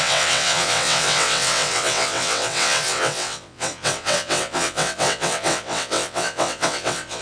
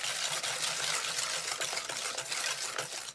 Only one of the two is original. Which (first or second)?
second